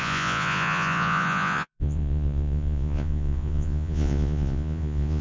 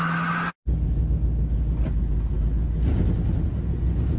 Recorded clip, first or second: second